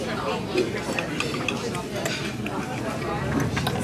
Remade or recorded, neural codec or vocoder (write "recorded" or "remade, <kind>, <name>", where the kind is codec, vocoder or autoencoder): recorded